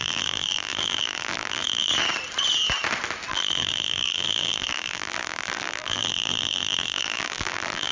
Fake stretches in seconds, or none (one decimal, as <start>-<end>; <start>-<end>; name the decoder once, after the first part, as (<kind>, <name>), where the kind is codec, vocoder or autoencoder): 0.0-1.9 (vocoder, BigVGAN v2); 3.3-7.9